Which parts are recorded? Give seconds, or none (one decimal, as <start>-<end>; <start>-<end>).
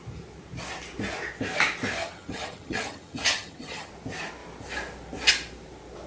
0.0-2.0; 3.9-6.1